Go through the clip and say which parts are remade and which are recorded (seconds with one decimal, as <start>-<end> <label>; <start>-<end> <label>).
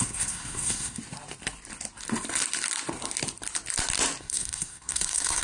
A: 0.0-1.0 remade; 1.0-4.2 recorded; 4.2-5.4 remade